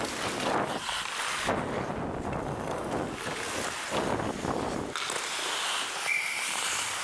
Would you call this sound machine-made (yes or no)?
no